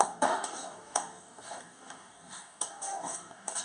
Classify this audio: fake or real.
fake